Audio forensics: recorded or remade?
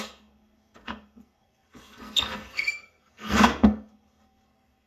remade